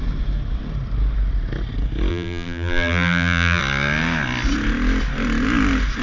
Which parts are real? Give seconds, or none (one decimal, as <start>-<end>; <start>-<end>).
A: 0.0-2.1; 3.6-6.0